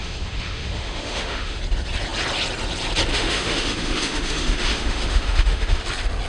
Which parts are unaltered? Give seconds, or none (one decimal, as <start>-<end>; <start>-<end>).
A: 1.6-3.1; 5.8-6.3